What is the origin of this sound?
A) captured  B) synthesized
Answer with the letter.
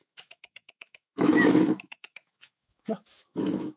B